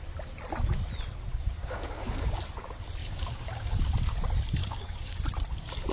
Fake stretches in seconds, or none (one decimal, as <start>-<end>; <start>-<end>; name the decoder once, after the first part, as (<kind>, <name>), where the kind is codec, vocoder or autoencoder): 1.3-2.4 (codec, DAC); 3.0-3.8; 4.6-5.2